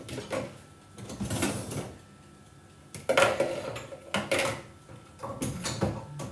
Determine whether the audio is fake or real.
real